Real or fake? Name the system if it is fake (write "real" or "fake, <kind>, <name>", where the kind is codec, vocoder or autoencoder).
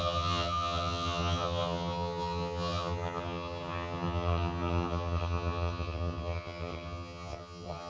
fake, vocoder, HiFi-GAN